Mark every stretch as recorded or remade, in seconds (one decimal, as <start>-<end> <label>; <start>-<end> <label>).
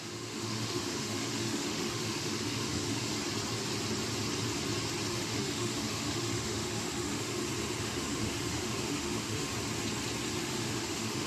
0.0-3.1 remade; 3.1-5.1 recorded; 5.1-7.3 remade; 7.3-7.8 recorded; 7.8-9.5 remade; 9.5-10.4 recorded; 10.4-11.3 remade